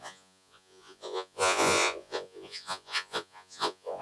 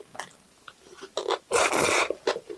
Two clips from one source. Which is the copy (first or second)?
first